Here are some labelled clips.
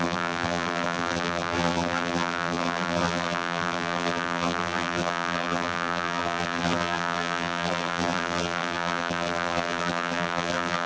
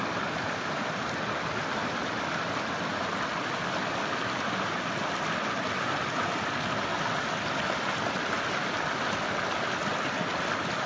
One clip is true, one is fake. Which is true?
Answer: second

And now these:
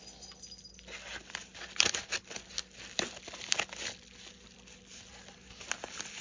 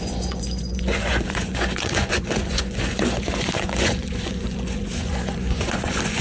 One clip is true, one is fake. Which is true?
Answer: first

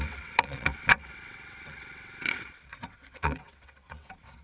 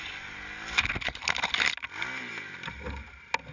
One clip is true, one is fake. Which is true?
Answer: second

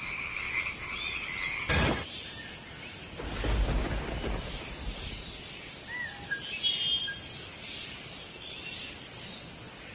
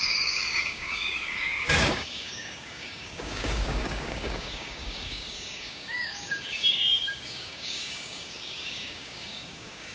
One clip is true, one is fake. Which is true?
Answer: first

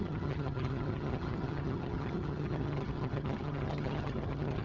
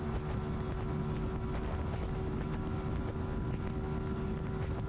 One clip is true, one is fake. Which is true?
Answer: second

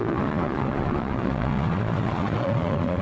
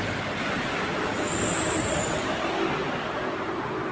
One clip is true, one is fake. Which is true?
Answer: second